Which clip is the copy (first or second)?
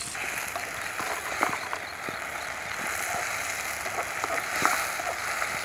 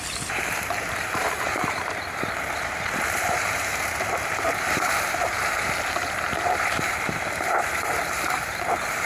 second